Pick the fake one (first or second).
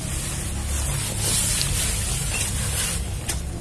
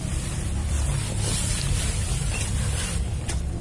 second